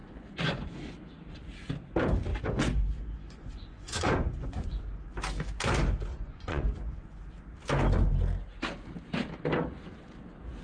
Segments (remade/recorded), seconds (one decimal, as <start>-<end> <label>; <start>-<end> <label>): 0.0-0.8 remade; 0.8-2.3 recorded; 2.3-4.8 remade; 4.8-6.1 recorded; 6.1-7.2 remade; 7.2-10.6 recorded